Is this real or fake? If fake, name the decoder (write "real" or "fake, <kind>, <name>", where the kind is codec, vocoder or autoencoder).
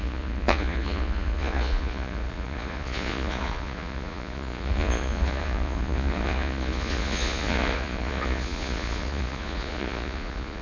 fake, vocoder, Vocos